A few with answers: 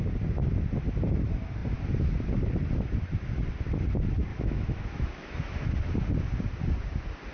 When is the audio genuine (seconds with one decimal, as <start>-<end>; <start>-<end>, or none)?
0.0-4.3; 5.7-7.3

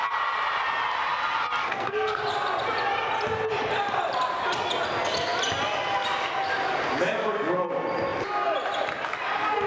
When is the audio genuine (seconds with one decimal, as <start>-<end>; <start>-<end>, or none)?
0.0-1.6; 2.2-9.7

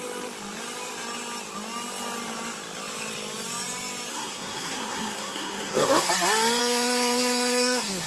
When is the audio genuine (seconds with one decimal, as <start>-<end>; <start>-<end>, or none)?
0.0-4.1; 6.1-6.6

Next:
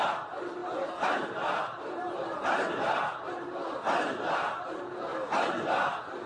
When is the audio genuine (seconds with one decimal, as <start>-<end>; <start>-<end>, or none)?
0.0-5.1; 5.6-6.3

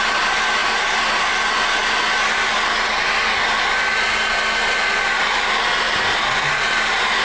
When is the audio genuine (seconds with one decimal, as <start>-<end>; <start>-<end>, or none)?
0.0-7.2

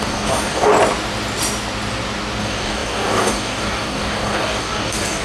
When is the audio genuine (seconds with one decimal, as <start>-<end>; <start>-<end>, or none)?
0.7-2.4

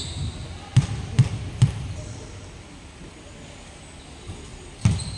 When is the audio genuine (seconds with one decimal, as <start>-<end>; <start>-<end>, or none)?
0.0-5.2